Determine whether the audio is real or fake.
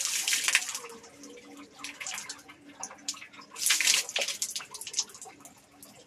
real